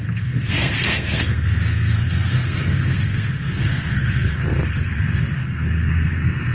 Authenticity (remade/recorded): remade